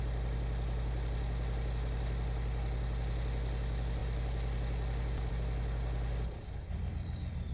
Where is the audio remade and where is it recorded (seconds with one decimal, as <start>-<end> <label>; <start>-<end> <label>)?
0.0-7.5 recorded